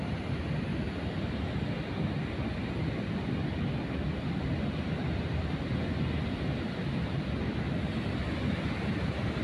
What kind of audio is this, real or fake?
real